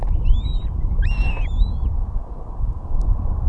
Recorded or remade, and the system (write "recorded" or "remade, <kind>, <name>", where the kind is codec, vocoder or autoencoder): recorded